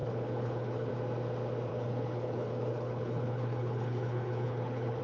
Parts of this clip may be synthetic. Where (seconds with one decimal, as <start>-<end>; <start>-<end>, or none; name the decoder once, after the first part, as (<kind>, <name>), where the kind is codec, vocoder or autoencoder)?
0.0-0.9 (codec, HILCodec); 1.7-5.0